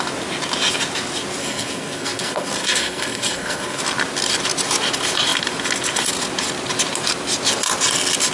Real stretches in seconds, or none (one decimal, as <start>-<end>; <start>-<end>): 0.0-1.4; 3.8-8.3